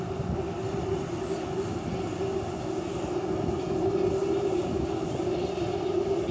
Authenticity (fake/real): real